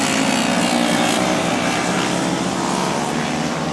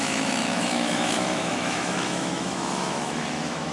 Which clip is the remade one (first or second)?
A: second